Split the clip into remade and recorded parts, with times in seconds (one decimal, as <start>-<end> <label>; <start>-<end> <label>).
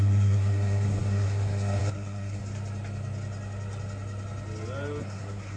0.0-2.4 remade; 2.4-5.0 recorded; 5.0-5.6 remade